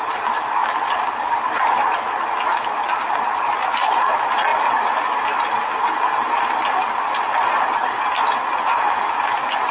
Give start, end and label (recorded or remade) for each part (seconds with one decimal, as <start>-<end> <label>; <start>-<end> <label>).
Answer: 0.0-9.7 recorded